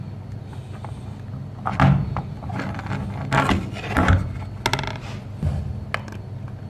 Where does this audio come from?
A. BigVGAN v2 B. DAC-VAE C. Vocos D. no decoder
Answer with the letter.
D